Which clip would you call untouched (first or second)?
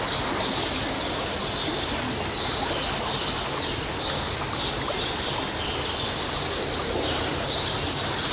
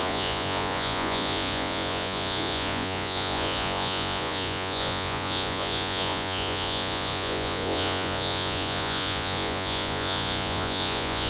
first